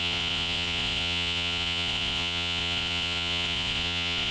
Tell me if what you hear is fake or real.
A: fake